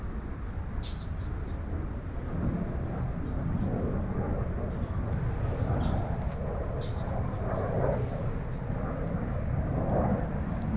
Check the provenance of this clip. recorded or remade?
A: recorded